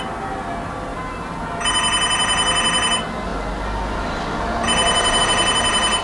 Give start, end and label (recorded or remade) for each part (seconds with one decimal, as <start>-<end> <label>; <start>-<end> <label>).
0.0-6.0 recorded